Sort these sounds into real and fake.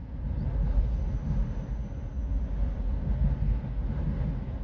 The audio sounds real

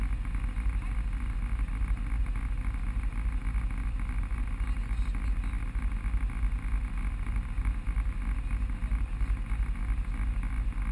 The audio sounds real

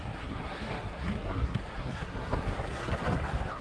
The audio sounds fake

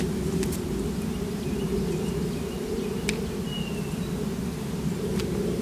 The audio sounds real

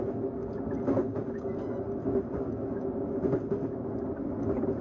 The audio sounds real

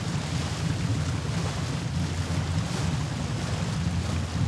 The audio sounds real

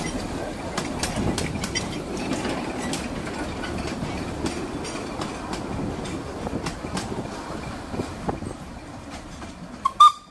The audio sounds real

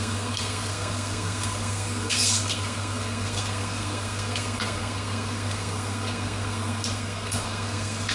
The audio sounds fake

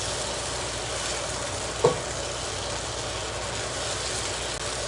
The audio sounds real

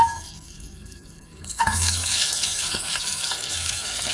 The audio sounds fake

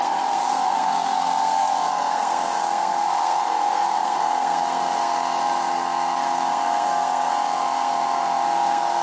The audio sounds fake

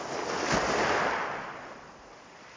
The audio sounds real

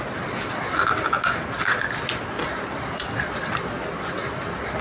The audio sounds real